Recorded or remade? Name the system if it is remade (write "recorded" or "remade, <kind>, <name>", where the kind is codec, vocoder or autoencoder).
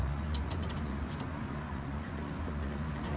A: remade, vocoder, Vocos